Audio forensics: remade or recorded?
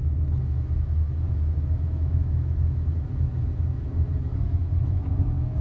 remade